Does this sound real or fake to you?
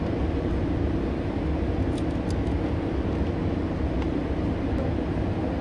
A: real